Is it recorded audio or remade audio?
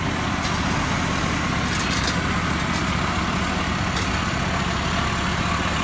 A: recorded